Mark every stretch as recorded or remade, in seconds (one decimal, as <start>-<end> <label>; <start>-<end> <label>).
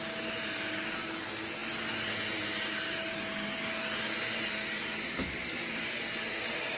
0.0-6.8 recorded